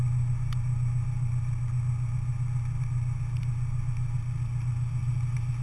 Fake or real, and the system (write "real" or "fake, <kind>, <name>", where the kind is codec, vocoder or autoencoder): real